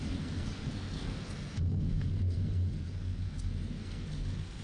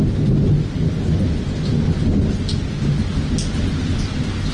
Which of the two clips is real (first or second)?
second